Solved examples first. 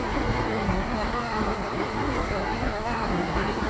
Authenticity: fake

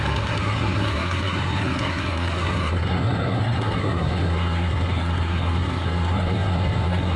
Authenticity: fake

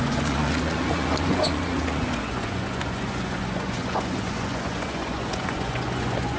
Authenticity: fake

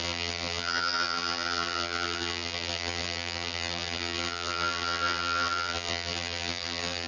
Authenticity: fake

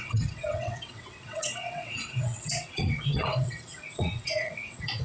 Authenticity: fake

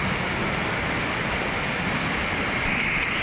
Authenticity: real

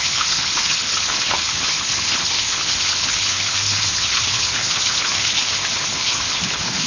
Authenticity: fake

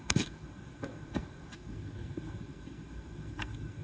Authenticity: fake